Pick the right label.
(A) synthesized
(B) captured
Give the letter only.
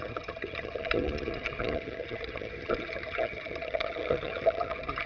A